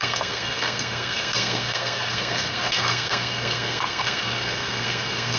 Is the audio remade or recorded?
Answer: remade